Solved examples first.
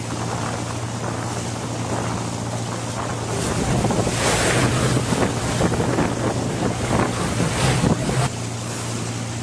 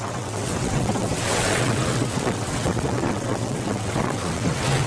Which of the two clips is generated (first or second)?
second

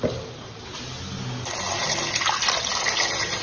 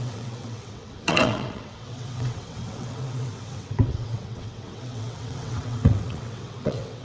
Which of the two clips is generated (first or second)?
second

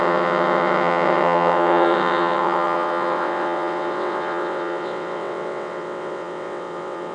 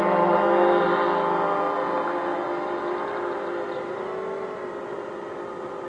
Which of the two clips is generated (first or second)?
first